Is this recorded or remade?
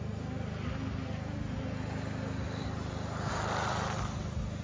recorded